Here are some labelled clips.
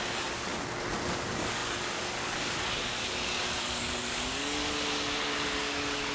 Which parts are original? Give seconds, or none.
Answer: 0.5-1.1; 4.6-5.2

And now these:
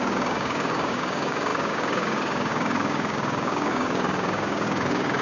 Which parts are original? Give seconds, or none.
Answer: none

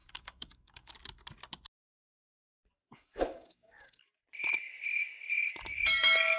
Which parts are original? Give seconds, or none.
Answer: 0.9-2.8; 4.2-5.7

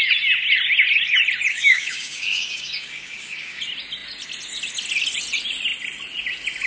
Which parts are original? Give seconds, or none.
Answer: 0.0-1.5; 3.6-6.7

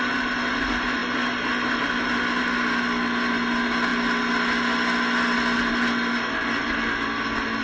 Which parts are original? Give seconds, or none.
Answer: 0.0-7.6

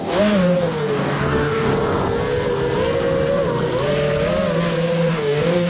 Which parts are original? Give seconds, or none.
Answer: 1.7-5.1